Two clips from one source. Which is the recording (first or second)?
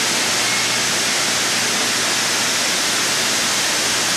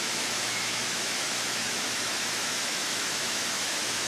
first